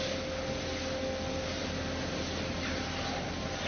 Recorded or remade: recorded